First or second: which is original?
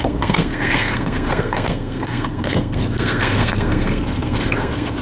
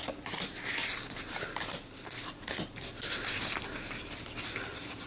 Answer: second